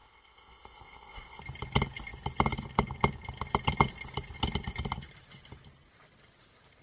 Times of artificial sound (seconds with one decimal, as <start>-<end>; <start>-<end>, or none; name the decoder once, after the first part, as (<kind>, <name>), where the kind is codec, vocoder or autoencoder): 0.0-1.4 (codec, ZipCodec)